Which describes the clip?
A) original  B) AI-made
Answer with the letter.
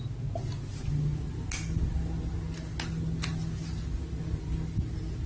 A